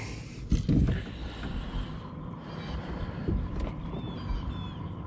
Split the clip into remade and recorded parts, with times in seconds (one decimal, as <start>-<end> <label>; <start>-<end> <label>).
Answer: 0.0-5.1 recorded